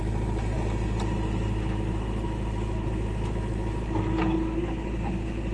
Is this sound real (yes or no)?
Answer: yes